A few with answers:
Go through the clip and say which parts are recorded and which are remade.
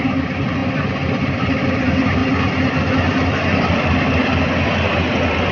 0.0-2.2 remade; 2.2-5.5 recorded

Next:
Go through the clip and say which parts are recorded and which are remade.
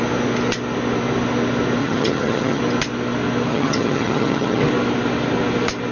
0.0-1.8 recorded; 1.8-2.6 remade; 2.6-3.5 recorded; 3.5-4.6 remade; 4.6-5.9 recorded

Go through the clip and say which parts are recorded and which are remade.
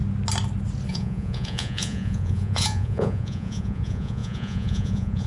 0.0-0.9 recorded; 0.9-5.3 remade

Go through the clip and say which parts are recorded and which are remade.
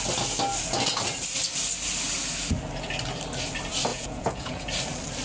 0.0-3.9 recorded; 3.9-4.7 remade; 4.7-5.2 recorded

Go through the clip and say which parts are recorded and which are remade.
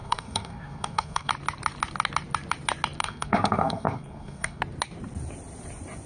0.0-1.3 remade; 1.3-3.0 recorded; 3.0-4.6 remade; 4.6-6.1 recorded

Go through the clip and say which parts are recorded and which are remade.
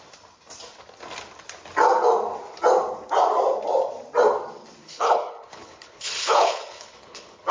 0.0-4.8 recorded; 4.8-7.5 remade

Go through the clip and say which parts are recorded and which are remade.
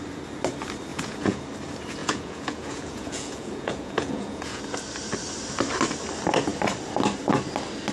0.0-0.9 recorded; 0.9-1.4 remade; 1.4-2.0 recorded; 2.0-4.6 remade; 4.6-7.9 recorded